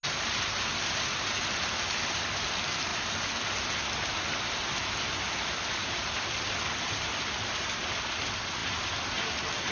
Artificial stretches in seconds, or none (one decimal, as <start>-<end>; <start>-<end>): none